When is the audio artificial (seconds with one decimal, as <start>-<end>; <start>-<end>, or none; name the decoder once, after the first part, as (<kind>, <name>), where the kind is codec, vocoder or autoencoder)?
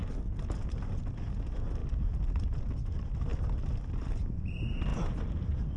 1.8-2.6 (vocoder, BigVGAN v2); 3.3-3.9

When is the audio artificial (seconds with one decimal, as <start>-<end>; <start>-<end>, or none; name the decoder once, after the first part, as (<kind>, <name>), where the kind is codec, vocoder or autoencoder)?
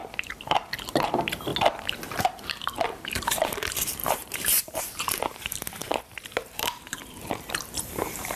0.8-1.5 (vocoder, BigVGAN v2); 2.2-5.8; 6.9-8.4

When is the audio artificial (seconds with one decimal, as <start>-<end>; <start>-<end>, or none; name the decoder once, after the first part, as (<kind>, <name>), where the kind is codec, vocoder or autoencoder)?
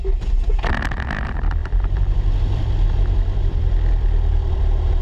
1.6-4.6 (vocoder, BigVGAN v2)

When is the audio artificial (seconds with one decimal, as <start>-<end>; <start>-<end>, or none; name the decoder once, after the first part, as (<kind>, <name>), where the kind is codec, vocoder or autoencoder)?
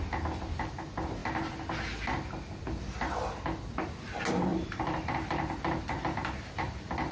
4.5-5.8 (vocoder, BigVGAN v2)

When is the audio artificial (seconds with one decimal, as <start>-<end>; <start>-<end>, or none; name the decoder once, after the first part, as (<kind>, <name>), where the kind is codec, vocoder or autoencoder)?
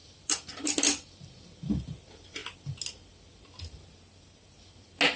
0.0-1.2 (vocoder, BigVGAN v2)